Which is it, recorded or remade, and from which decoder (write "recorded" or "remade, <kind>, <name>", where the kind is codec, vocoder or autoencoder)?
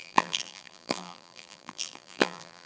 remade, vocoder, BigVGAN v2